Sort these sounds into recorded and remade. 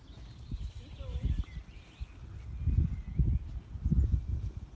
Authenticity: recorded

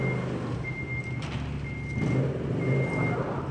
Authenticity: recorded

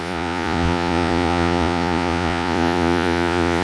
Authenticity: remade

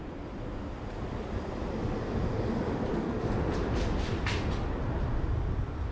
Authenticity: recorded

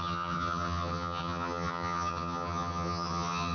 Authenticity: remade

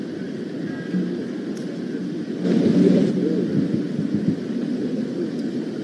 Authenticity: recorded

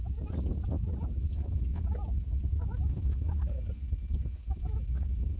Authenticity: recorded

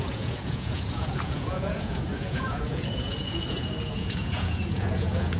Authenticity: remade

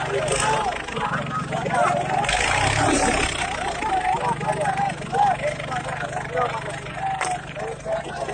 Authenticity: recorded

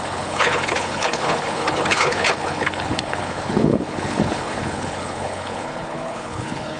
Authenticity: remade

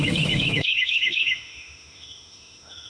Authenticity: remade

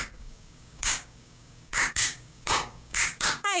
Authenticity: remade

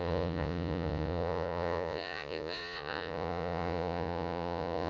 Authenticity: remade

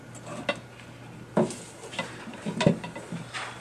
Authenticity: recorded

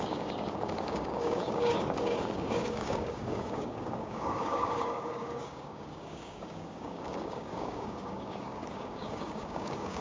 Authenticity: remade